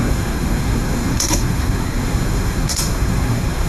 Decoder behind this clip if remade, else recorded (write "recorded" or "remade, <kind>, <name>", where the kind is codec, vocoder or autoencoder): remade, codec, SNAC